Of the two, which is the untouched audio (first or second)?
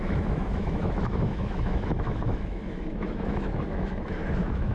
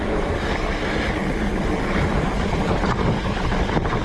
second